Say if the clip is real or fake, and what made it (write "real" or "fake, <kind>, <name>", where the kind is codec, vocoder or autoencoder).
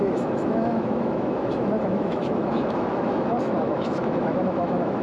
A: fake, autoencoder, DAC-VAE